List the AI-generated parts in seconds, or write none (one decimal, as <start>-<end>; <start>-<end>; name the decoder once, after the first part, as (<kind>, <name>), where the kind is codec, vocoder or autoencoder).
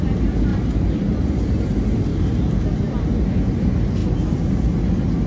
none